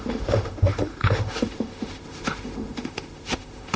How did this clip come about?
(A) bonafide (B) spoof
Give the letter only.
B